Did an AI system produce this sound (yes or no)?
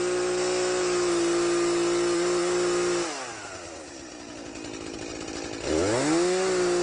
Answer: no